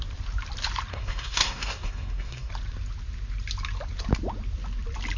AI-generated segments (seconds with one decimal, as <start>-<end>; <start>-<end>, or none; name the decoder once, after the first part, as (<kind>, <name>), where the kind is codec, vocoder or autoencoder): 0.9-2.5 (codec, SNAC)